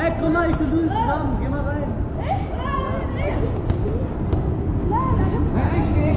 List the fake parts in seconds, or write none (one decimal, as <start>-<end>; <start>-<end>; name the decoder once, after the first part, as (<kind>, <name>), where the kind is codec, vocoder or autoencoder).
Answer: none